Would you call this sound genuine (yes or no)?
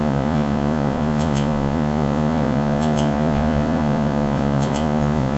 no